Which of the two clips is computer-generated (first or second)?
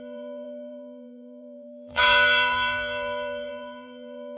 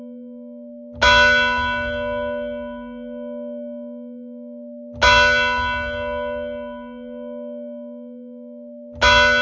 first